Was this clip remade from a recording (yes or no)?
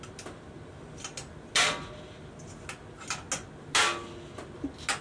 no